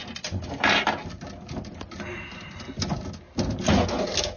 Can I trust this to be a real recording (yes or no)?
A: yes